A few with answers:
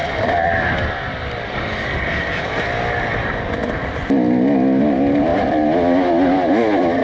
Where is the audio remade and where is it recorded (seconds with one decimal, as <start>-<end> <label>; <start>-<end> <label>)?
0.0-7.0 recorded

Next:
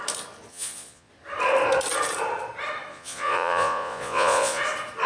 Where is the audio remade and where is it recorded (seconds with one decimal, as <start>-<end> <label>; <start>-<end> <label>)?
0.0-0.5 recorded; 0.5-1.1 remade; 1.1-2.9 recorded; 2.9-4.6 remade; 4.6-5.1 recorded

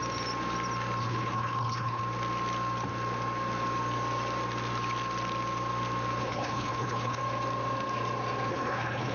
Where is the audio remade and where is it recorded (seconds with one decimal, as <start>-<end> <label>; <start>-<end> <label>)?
0.0-1.0 recorded; 1.0-2.0 remade; 2.0-6.2 recorded; 6.2-7.2 remade; 7.2-8.5 recorded; 8.5-9.1 remade

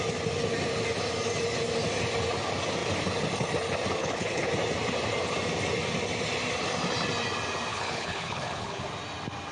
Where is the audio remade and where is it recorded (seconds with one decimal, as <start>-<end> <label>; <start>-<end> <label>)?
0.0-4.0 recorded; 4.0-4.5 remade; 4.5-7.7 recorded; 7.7-8.8 remade; 8.8-9.5 recorded